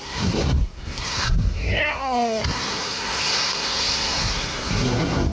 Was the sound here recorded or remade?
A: remade